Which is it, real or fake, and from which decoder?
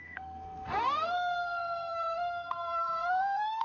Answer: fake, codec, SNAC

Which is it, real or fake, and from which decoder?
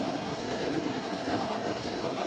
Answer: fake, codec, SNAC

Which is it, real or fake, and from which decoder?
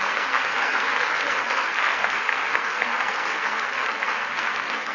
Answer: fake, codec, SNAC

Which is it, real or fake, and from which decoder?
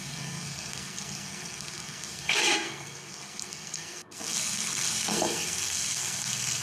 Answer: fake, codec, SNAC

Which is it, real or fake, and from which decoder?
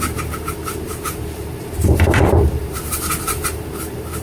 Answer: fake, vocoder, BigVGAN v2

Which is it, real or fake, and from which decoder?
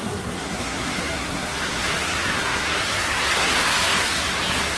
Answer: fake, codec, SNAC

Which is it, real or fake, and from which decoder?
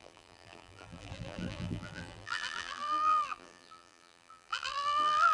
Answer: fake, vocoder, BigVGAN v2